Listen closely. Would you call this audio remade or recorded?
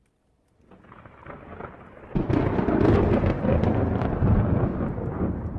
recorded